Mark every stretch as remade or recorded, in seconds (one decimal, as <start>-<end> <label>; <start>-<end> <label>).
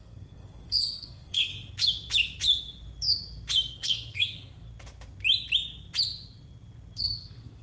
0.0-1.5 remade; 1.5-3.7 recorded; 3.7-4.7 remade; 4.7-7.0 recorded; 7.0-7.6 remade